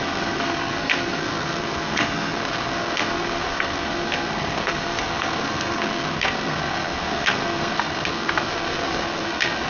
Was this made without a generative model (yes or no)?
no